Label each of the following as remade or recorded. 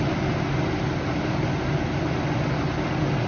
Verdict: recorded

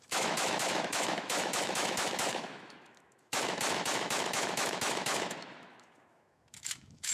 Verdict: remade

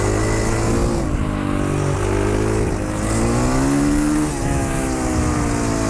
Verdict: recorded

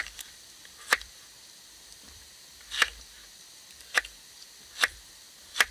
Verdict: remade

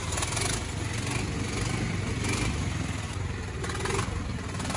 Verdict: recorded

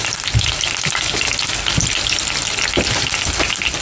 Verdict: recorded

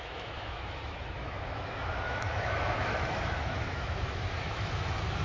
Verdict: remade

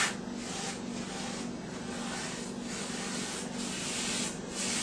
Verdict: recorded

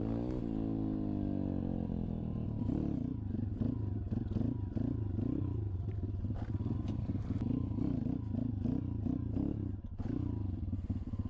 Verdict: recorded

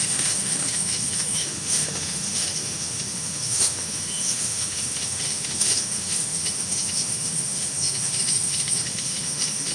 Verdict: remade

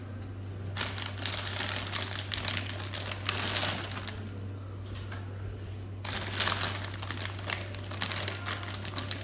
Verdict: recorded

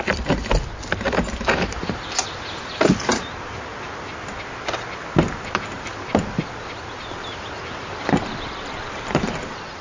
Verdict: recorded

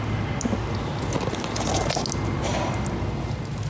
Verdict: recorded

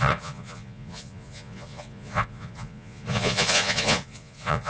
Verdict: remade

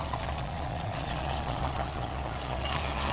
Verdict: remade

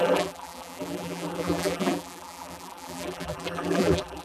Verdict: remade